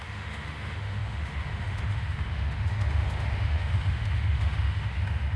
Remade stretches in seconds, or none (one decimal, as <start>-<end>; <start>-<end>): 0.0-5.4